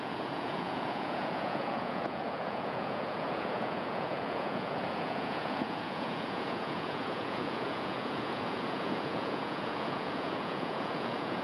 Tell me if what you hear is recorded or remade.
remade